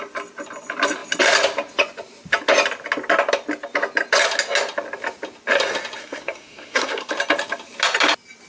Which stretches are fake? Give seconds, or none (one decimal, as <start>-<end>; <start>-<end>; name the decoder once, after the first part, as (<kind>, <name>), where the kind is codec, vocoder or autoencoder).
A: 6.0-7.1 (codec, SNAC)